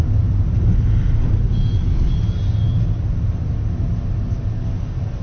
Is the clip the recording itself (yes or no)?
yes